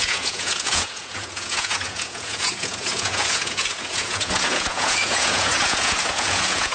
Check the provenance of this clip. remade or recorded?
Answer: remade